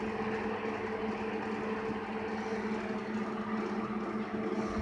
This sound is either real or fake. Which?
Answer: real